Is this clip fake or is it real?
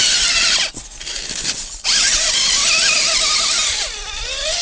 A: real